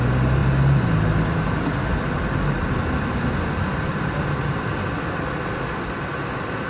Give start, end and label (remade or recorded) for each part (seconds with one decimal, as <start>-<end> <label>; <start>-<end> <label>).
0.0-6.7 recorded